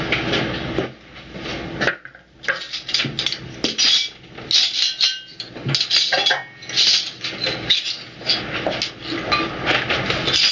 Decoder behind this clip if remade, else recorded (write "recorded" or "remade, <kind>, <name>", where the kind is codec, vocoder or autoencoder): recorded